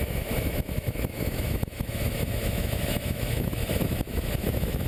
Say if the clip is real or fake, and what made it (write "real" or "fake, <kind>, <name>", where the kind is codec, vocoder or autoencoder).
fake, autoencoder, DAC-VAE